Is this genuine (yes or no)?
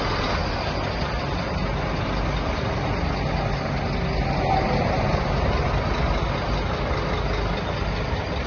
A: yes